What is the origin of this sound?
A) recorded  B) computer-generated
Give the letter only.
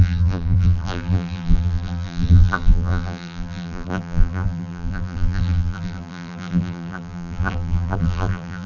B